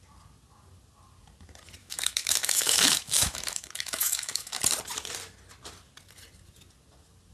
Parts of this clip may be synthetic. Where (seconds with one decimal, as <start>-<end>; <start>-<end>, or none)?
1.8-4.6